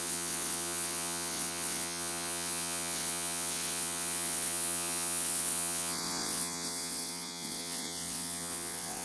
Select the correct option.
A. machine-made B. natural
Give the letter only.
A